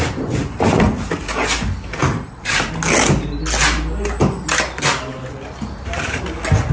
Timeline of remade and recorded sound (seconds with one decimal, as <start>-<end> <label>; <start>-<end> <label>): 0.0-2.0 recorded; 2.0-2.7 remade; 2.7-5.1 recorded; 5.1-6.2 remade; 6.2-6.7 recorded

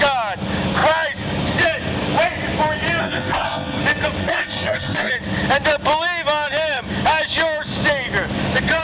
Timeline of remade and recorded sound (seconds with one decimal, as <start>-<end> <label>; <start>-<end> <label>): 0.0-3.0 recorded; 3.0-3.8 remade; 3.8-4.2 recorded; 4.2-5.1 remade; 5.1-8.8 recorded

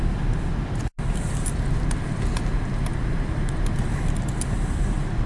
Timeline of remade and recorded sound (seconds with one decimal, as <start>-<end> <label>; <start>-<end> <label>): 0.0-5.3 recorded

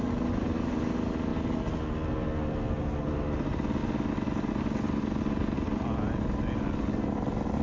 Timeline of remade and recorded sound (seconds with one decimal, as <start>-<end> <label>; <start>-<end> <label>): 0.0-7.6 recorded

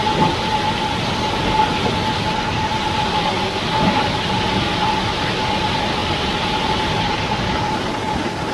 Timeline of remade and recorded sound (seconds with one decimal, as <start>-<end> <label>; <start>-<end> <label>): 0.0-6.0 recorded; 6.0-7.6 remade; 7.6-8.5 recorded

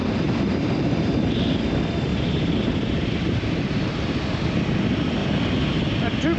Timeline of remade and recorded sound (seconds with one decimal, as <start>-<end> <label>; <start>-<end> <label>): 0.0-1.3 remade; 1.3-2.1 recorded; 2.1-4.0 remade; 4.0-5.2 recorded; 5.2-5.8 remade; 5.8-6.4 recorded

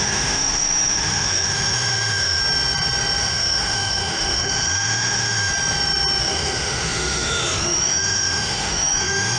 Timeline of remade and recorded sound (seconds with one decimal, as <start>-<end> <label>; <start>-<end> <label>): 0.0-2.4 remade; 2.4-3.2 recorded; 3.2-5.5 remade; 5.5-6.2 recorded; 6.2-9.4 remade

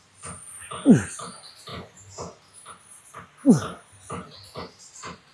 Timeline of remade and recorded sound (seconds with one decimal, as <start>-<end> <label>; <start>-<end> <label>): 0.0-5.3 recorded